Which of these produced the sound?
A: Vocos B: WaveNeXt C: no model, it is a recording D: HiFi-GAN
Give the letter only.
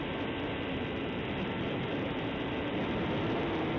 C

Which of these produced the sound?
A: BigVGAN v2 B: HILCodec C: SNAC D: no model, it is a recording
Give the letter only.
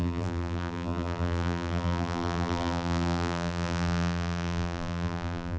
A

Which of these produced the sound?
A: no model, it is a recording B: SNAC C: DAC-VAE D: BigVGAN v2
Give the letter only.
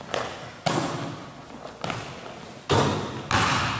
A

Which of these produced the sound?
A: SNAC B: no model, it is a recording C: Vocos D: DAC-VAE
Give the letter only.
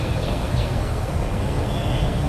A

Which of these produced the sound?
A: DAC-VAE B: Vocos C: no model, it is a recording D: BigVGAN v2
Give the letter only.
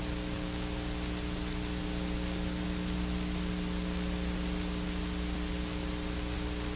C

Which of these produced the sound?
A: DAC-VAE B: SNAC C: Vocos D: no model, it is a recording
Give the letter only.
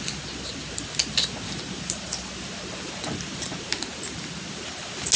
D